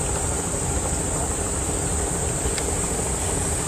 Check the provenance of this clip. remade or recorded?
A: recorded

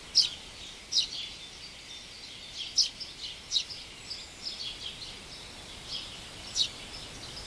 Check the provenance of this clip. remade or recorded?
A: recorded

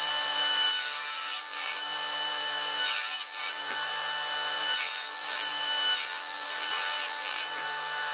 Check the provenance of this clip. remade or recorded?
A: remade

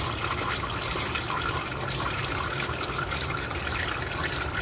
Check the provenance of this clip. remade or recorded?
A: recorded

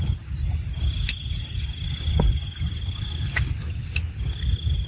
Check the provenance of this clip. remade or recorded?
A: recorded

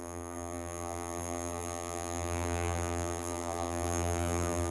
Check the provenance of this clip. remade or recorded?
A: remade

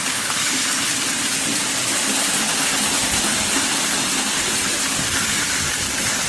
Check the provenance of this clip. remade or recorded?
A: remade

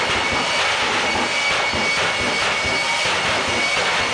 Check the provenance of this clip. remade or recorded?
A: recorded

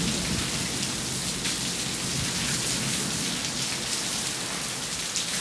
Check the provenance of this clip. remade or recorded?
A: recorded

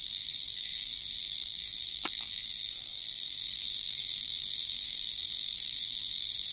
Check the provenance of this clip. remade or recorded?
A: remade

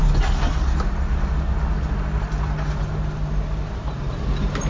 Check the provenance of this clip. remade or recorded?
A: recorded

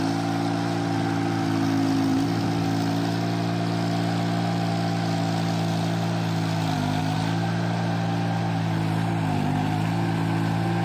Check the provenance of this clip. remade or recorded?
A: recorded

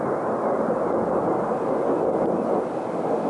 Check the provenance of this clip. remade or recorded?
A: recorded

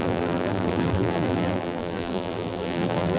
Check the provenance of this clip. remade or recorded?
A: remade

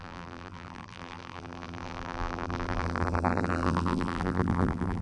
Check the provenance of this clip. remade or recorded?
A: remade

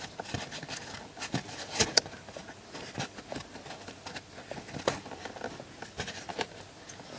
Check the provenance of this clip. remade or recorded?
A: recorded